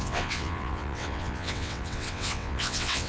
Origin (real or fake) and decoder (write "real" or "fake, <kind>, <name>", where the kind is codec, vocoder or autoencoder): fake, vocoder, WaveNeXt